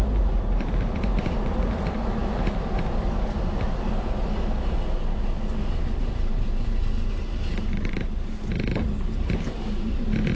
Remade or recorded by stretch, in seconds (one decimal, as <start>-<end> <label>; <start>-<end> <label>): 0.0-2.2 remade; 2.2-6.0 recorded; 6.0-10.4 remade